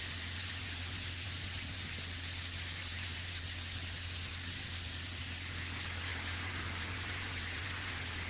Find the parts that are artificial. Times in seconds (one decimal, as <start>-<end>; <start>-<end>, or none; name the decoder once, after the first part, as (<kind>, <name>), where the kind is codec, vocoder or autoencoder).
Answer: 0.0-1.9 (vocoder, BigVGAN v2); 2.8-3.4; 4.3-5.2; 6.1-7.9